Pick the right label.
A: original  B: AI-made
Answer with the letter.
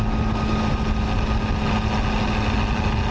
A